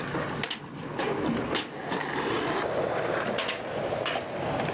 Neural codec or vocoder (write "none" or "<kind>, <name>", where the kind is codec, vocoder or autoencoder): none